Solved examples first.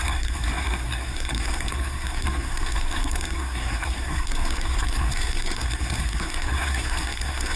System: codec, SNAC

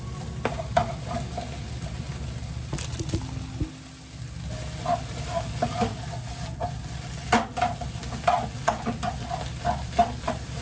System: none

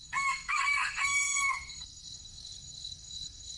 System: codec, SNAC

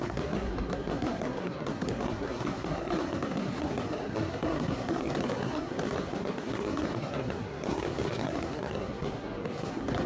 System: codec, SNAC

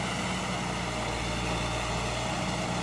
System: none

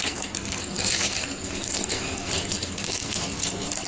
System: codec, SNAC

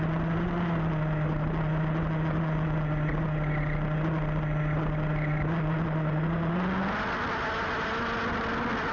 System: none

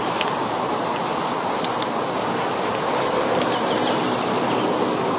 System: none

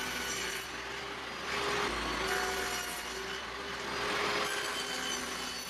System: none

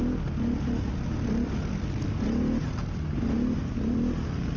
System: none